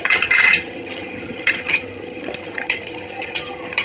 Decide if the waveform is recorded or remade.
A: remade